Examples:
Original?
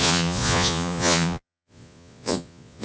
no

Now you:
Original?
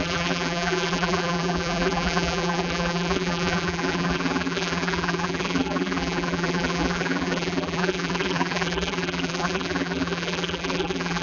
no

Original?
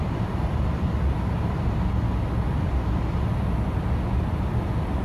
yes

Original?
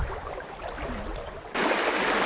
yes